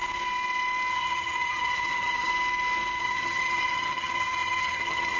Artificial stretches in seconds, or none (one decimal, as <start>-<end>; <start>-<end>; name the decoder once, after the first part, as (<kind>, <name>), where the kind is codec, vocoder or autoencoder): 0.9-2.3 (vocoder, HiFi-GAN); 3.0-5.2

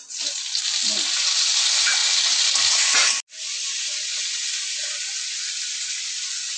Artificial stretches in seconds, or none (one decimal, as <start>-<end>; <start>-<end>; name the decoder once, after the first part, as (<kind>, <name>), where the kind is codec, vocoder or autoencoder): none

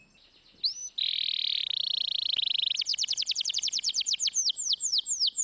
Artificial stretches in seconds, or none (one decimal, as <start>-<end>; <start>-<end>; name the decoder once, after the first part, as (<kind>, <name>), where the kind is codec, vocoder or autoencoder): 0.8-2.3 (vocoder, BigVGAN v2); 2.9-3.9